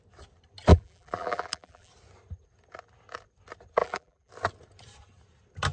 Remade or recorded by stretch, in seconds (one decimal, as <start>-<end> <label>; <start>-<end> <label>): 0.0-0.7 recorded; 0.7-1.9 remade; 1.9-3.8 recorded; 3.8-4.3 remade; 4.3-5.7 recorded